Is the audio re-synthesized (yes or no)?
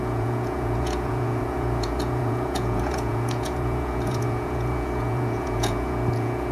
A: yes